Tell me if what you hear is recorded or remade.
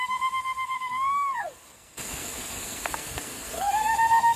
remade